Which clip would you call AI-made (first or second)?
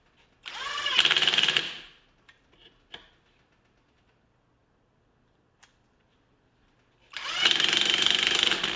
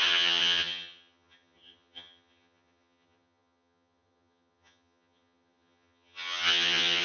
second